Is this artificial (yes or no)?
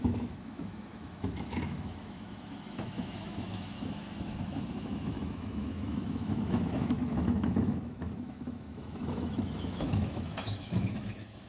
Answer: yes